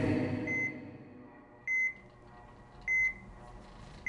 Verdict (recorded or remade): recorded